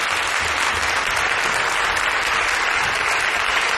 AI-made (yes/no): no